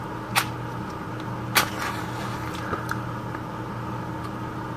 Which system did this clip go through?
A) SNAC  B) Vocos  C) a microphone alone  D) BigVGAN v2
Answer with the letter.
C